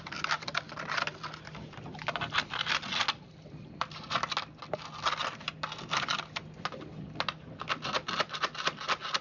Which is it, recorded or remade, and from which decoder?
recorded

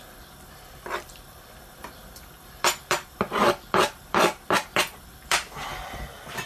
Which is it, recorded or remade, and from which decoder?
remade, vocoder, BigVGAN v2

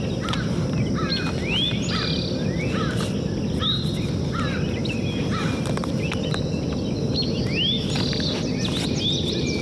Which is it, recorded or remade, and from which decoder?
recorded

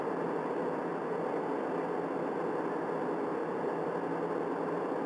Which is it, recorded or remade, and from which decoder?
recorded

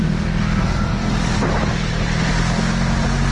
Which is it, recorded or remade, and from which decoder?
remade, vocoder, BigVGAN v2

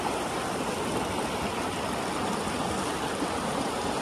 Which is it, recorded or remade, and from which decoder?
recorded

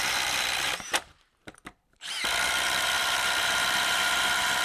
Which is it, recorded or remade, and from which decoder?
remade, vocoder, BigVGAN v2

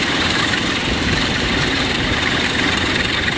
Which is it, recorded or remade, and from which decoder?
remade, vocoder, BigVGAN v2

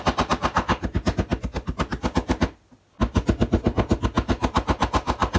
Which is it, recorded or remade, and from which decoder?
recorded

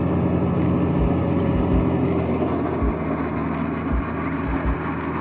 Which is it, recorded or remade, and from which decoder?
recorded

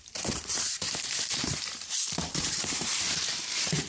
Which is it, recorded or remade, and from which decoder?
remade, vocoder, BigVGAN v2